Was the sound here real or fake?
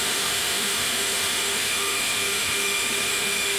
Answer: fake